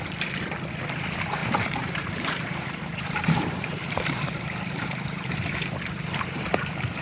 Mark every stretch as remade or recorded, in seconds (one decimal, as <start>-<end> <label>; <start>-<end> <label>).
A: 0.0-1.4 recorded; 1.4-5.3 remade; 5.3-7.0 recorded